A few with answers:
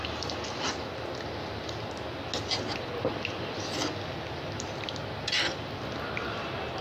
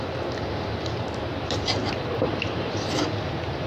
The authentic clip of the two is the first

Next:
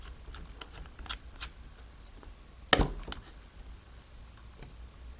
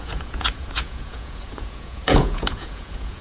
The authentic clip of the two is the first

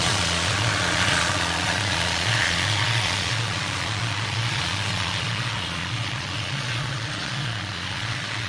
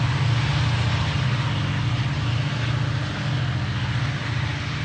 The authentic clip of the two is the second